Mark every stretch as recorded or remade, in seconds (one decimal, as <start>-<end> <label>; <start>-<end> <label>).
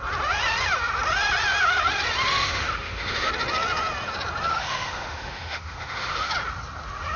0.0-2.3 recorded; 2.3-3.3 remade; 3.3-4.5 recorded; 4.5-6.3 remade; 6.3-7.2 recorded